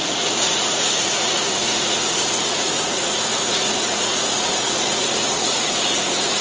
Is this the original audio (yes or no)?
no